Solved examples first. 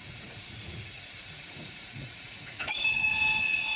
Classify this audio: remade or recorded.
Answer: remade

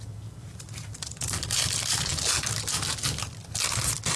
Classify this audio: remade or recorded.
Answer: recorded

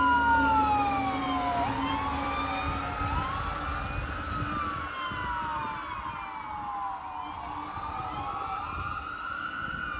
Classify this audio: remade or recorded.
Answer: recorded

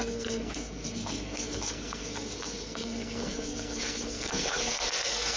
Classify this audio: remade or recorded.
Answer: remade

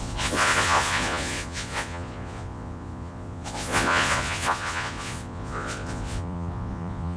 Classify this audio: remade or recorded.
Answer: remade